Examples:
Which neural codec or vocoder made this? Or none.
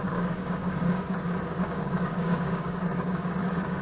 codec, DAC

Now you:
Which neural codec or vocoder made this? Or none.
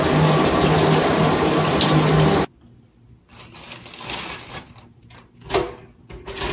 none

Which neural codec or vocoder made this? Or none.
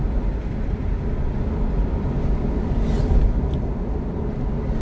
none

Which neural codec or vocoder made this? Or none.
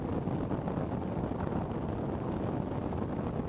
none